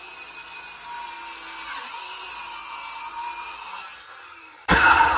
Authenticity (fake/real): real